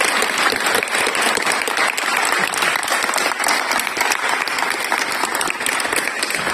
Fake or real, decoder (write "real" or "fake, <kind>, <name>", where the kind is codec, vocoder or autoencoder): fake, vocoder, BigVGAN v2